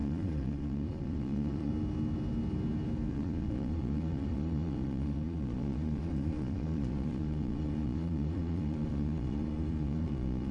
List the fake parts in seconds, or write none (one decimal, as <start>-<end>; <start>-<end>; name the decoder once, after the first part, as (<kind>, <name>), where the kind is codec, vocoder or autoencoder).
0.0-1.7 (vocoder, Vocos); 3.1-10.5